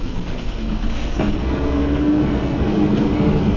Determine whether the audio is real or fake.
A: fake